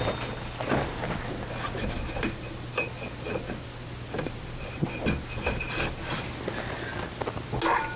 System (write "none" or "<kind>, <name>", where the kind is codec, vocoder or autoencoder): none